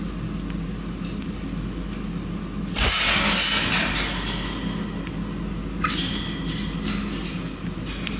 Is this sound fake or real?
real